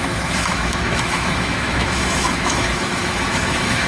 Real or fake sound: fake